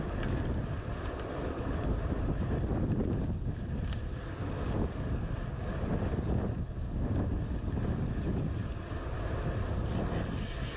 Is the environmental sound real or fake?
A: real